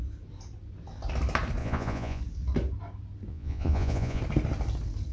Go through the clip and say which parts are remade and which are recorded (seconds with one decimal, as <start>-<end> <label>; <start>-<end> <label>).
0.0-1.6 recorded; 1.6-2.2 remade; 2.2-3.3 recorded; 3.3-4.2 remade; 4.2-5.1 recorded